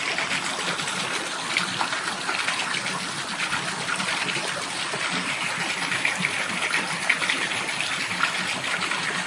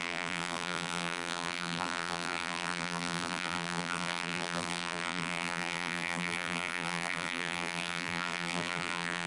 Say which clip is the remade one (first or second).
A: second